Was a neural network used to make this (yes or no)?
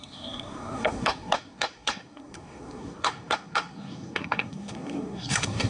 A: yes